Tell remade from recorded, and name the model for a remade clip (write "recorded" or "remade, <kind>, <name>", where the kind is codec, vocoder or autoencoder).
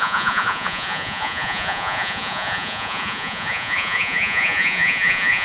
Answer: remade, vocoder, Vocos